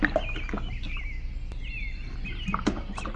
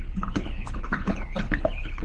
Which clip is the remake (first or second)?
second